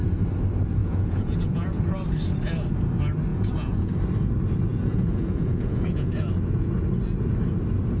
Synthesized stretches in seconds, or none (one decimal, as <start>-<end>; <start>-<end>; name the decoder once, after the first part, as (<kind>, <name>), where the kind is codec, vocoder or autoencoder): 0.8-1.8 (vocoder, Vocos); 3.3-3.9; 4.7-6.1